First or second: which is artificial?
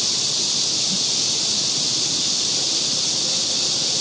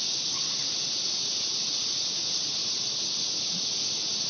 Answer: second